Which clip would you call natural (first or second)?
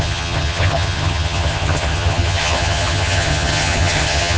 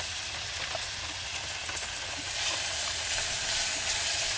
second